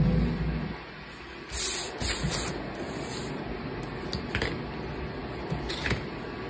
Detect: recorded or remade recorded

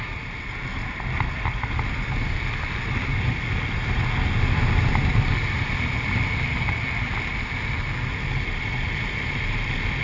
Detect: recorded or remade recorded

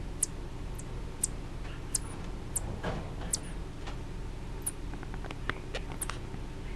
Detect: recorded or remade recorded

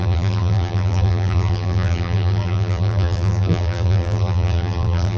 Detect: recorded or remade remade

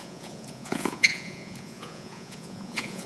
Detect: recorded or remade remade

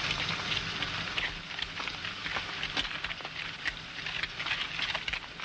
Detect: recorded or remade recorded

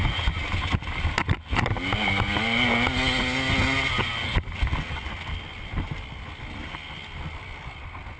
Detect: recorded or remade recorded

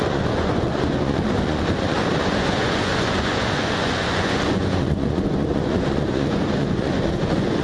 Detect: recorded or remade remade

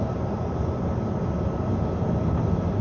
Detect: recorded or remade recorded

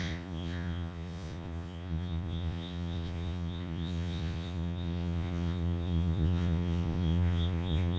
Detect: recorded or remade remade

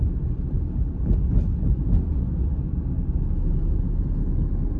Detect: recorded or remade recorded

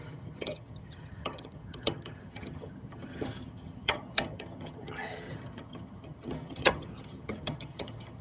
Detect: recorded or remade remade